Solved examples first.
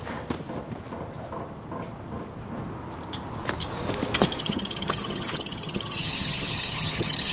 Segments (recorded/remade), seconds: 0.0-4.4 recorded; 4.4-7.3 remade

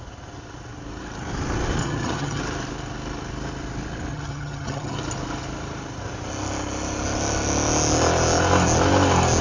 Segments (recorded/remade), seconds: 0.0-1.8 recorded; 1.8-2.4 remade; 2.4-4.1 recorded; 4.1-5.0 remade; 5.0-9.4 recorded

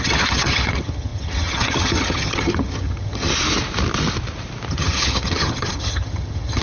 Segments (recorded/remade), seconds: 0.0-3.3 remade; 3.3-4.7 recorded; 4.7-6.6 remade

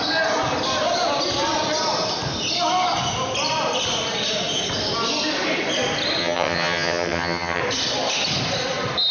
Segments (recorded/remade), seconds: 0.0-6.2 recorded; 6.2-7.6 remade; 7.6-9.1 recorded

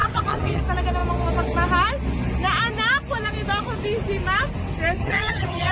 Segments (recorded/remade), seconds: 0.0-0.6 remade; 0.6-5.0 recorded; 5.0-5.7 remade

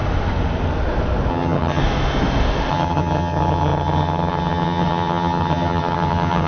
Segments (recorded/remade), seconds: 0.0-1.3 recorded; 1.3-1.8 remade; 1.8-2.7 recorded; 2.7-6.5 remade